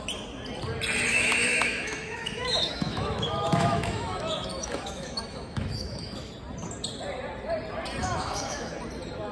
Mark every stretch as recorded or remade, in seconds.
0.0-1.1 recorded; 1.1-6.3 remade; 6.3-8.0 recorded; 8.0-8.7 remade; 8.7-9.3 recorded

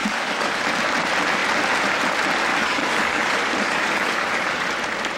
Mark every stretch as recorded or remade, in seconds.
0.0-0.6 remade; 0.6-2.5 recorded; 2.5-4.7 remade; 4.7-5.2 recorded

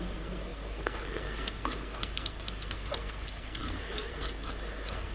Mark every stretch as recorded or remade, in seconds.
0.0-5.1 remade

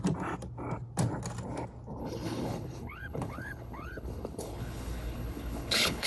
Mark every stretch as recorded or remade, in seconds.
0.0-2.0 recorded; 2.0-6.1 remade